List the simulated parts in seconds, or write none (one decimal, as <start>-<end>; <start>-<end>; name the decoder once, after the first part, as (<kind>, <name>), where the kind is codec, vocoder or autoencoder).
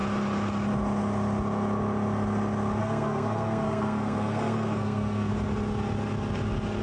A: 2.8-5.3 (codec, SNAC)